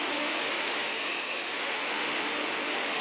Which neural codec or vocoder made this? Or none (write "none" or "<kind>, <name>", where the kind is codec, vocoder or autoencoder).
autoencoder, DAC-VAE